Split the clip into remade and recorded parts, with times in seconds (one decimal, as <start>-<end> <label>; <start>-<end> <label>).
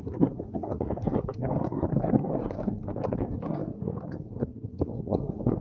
0.0-5.6 remade